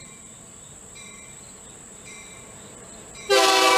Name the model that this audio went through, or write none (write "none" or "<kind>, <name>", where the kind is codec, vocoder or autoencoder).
vocoder, BigVGAN v2